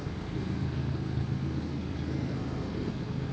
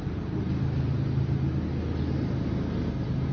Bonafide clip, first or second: second